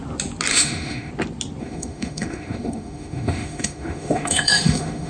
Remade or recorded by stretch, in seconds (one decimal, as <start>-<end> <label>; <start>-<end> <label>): 0.0-0.5 recorded; 0.5-1.1 remade; 1.1-1.6 recorded; 1.6-5.1 remade